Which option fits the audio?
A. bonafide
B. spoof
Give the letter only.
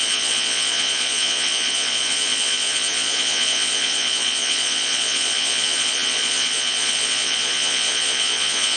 B